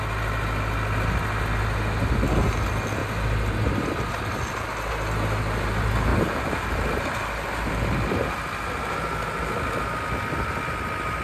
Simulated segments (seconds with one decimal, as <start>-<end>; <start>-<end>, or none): 3.0-4.1; 6.1-7.7